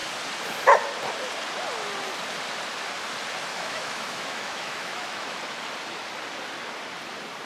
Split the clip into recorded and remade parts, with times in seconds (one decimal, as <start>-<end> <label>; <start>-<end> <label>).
0.0-3.5 recorded; 3.5-5.4 remade; 5.4-7.5 recorded